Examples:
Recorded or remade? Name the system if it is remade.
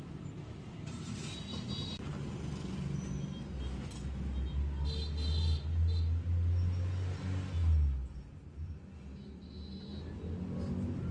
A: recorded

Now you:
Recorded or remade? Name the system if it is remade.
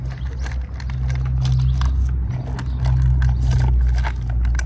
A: recorded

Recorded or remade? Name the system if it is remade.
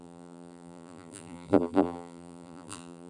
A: remade, vocoder, BigVGAN v2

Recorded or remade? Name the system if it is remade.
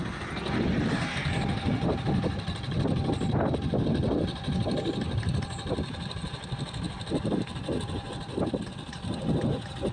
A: recorded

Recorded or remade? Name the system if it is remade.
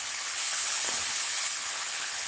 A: remade, codec, HILCodec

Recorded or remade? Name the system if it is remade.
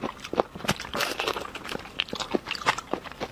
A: remade, vocoder, BigVGAN v2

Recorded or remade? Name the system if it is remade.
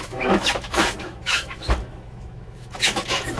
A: remade, autoencoder, DAC-VAE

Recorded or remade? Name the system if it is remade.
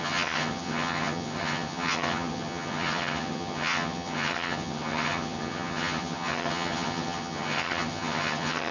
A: remade, vocoder, HiFi-GAN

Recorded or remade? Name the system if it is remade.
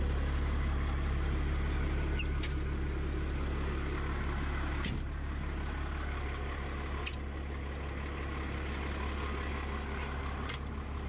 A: recorded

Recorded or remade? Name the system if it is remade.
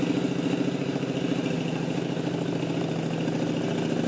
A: recorded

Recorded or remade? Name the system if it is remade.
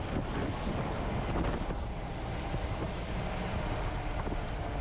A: recorded